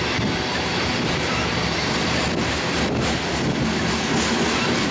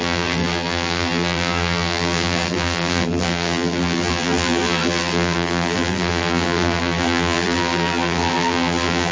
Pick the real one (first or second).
first